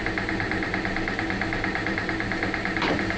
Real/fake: real